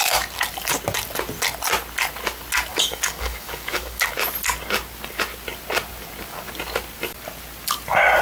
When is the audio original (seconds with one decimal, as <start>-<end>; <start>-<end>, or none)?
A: 0.0-2.7; 4.1-8.2